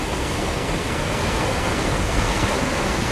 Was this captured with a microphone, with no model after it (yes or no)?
no